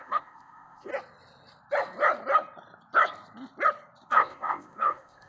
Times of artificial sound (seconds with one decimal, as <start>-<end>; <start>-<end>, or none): 0.0-0.9; 4.1-5.3